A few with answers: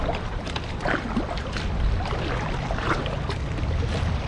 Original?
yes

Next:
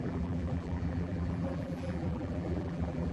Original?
no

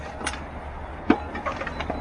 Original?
no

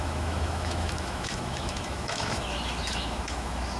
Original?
no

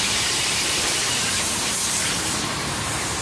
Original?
no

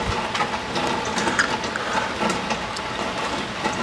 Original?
yes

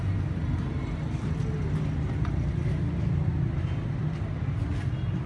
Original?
yes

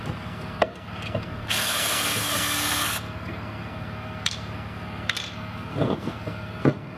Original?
no